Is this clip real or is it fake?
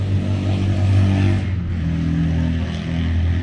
real